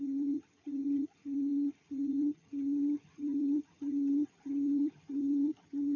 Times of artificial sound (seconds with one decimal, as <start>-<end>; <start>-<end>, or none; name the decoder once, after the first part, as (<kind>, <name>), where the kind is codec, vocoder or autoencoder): 0.0-6.0 (vocoder, HiFi-GAN)